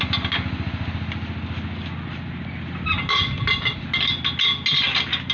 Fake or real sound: real